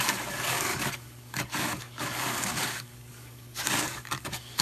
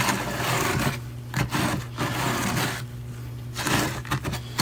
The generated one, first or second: first